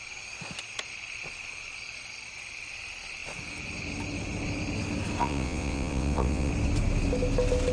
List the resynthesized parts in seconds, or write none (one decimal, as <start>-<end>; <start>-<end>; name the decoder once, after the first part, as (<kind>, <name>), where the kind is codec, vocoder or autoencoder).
5.2-6.5 (vocoder, WaveNeXt)